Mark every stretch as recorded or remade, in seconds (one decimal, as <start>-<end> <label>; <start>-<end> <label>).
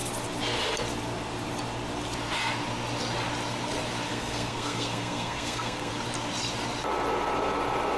0.0-4.1 recorded; 4.1-5.9 remade; 5.9-8.0 recorded